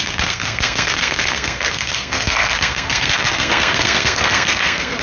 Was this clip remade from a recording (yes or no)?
yes